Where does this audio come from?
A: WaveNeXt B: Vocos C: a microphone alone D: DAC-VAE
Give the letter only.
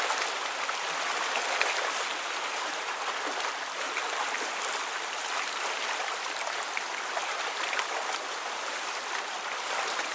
C